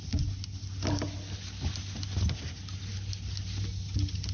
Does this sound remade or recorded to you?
recorded